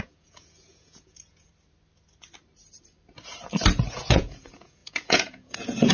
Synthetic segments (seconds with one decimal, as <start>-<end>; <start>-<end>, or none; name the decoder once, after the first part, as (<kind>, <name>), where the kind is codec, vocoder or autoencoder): 0.0-1.5 (vocoder, Vocos); 3.9-5.9